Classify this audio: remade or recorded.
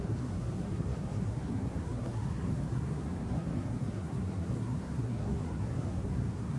remade